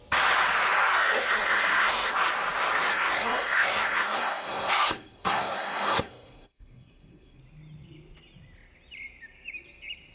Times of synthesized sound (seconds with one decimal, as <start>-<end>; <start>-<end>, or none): 0.9-2.1; 2.9-7.4